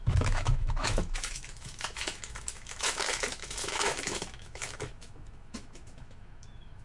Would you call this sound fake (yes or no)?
yes